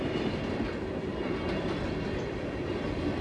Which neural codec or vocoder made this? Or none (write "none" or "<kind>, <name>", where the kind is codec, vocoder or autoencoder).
none